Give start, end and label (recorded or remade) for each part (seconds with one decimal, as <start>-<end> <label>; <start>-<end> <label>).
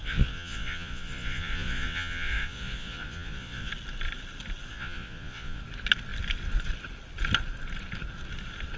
0.0-3.7 remade; 3.7-4.7 recorded; 4.7-5.6 remade; 5.6-8.8 recorded